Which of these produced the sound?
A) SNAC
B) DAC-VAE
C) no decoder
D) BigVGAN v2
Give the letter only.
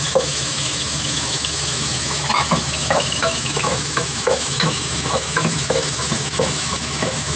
B